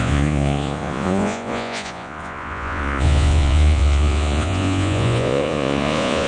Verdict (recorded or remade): remade